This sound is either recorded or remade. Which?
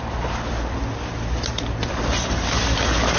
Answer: remade